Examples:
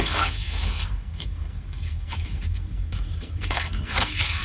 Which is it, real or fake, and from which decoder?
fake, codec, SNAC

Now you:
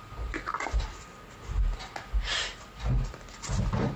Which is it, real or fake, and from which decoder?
real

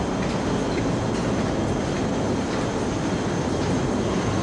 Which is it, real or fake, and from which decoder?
real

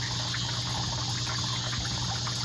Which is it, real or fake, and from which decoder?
real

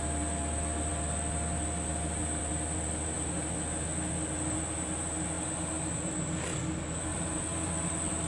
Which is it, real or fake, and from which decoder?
real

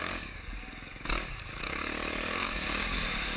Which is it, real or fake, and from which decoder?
fake, codec, DAC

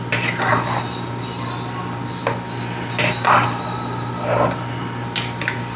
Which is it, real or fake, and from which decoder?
real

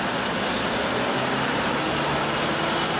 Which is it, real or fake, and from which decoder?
real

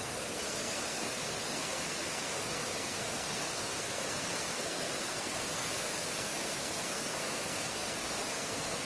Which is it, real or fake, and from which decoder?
fake, codec, SNAC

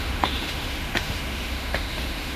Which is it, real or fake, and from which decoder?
fake, autoencoder, DAC-VAE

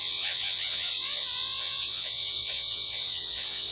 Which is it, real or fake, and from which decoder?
fake, vocoder, Vocos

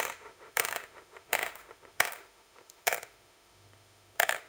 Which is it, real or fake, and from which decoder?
fake, autoencoder, DAC-VAE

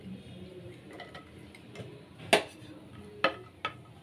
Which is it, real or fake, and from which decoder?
real